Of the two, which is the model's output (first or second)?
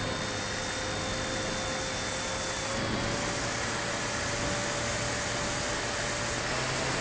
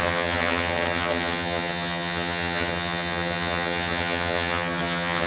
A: second